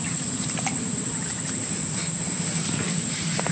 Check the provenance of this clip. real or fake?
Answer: fake